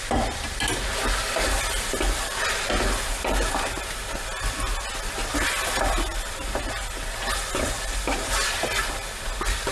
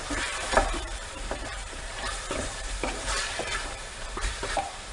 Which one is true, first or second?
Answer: first